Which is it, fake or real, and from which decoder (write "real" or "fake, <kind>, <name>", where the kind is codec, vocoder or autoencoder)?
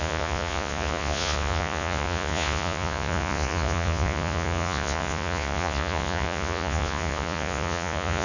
fake, vocoder, Vocos